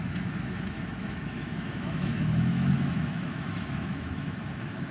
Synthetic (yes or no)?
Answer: yes